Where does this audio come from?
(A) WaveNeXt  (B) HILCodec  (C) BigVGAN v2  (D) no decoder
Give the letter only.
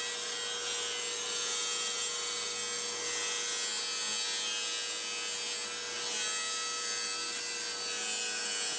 D